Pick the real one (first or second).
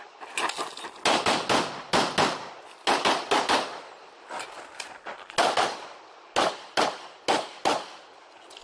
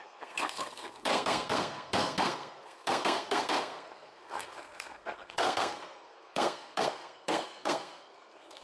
first